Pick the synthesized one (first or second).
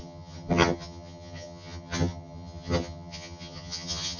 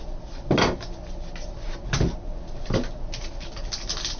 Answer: first